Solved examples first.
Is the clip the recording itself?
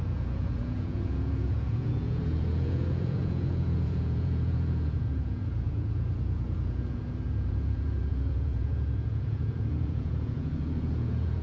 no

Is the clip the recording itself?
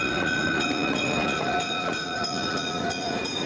no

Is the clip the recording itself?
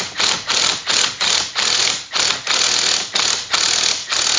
yes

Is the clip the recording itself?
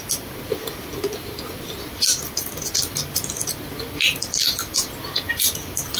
yes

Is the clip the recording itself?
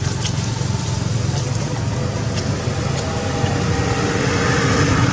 yes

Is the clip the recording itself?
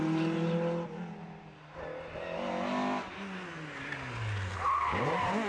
yes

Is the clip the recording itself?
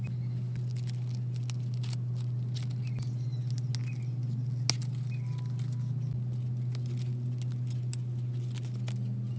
yes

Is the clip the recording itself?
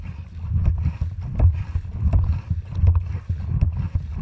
yes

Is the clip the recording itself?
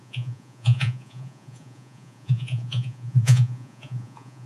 no